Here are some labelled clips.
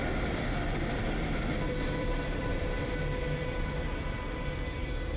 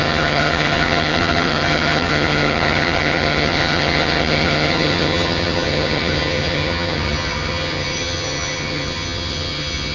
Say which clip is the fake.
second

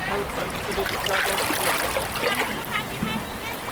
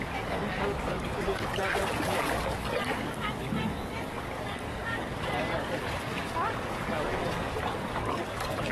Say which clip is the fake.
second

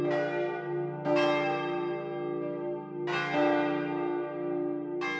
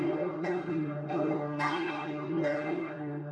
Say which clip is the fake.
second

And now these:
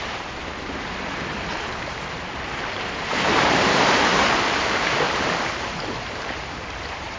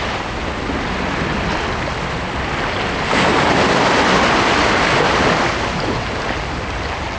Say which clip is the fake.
first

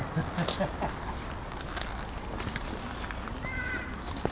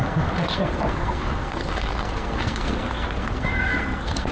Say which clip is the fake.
second